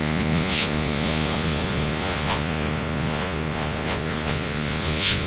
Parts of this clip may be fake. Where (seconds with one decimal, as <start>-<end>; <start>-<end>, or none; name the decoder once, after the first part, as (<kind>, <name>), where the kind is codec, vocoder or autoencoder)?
0.0-5.3 (vocoder, Vocos)